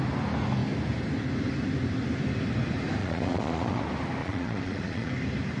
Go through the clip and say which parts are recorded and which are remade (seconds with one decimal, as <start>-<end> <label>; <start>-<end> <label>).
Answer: 0.0-3.0 recorded; 3.0-3.8 remade; 3.8-4.2 recorded; 4.2-5.1 remade; 5.1-5.6 recorded